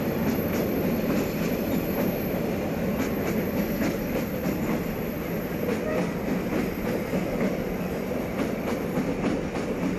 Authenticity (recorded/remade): recorded